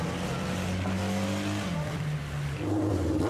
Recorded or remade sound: recorded